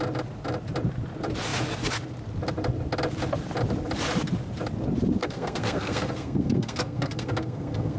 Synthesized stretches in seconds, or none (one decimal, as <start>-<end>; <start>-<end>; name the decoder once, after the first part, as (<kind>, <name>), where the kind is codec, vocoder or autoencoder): 5.2-8.0 (codec, SNAC)